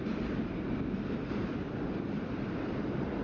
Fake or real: real